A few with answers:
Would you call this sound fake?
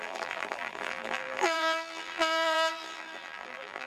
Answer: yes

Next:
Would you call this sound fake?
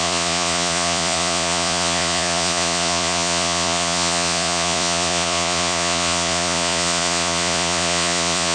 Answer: yes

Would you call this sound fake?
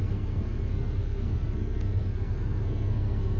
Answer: yes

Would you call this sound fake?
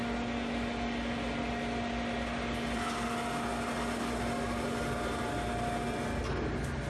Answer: no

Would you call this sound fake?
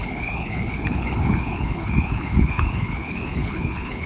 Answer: yes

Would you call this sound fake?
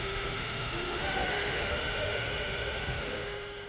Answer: yes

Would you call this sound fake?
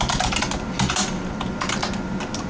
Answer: no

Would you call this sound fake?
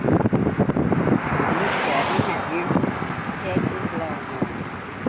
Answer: no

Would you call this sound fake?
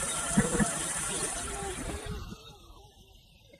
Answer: yes